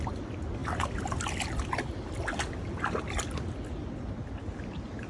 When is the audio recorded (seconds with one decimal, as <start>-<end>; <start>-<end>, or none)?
0.0-5.1